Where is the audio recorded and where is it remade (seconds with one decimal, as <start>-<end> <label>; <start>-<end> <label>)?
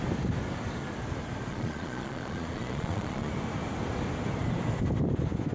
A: 0.0-1.5 recorded; 1.5-3.3 remade; 3.3-5.5 recorded